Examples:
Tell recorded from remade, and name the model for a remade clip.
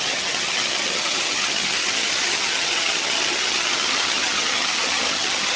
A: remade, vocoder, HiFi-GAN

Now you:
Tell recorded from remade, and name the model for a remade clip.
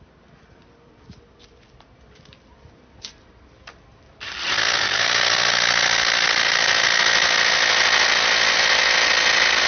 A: recorded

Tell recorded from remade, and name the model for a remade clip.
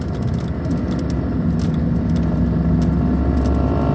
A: recorded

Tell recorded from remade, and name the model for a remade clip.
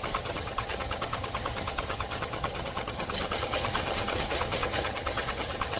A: remade, vocoder, HiFi-GAN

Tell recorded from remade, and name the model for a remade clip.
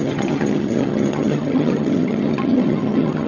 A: remade, vocoder, HiFi-GAN